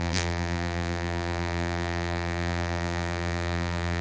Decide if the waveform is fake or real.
fake